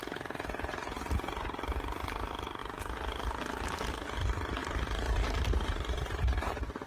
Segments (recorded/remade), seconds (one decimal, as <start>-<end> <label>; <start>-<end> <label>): 0.0-4.6 recorded; 4.6-6.9 remade